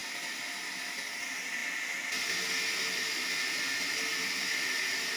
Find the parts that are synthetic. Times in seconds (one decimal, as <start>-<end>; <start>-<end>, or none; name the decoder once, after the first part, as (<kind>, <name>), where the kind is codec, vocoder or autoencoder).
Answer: none